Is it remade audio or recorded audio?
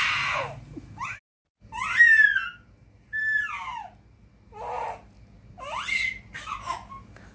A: recorded